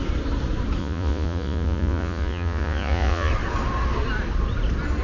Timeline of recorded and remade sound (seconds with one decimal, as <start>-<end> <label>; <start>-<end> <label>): 0.0-0.8 recorded; 0.8-3.3 remade; 3.3-5.0 recorded